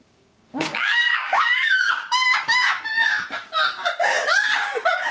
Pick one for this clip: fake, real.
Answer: fake